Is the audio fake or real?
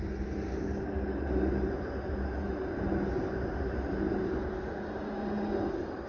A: real